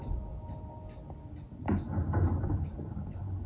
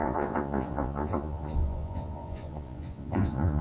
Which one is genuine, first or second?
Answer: first